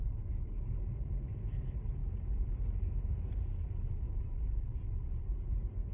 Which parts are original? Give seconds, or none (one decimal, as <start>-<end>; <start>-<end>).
0.0-5.9